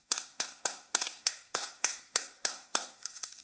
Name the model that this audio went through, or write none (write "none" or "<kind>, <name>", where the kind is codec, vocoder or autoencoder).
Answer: codec, SNAC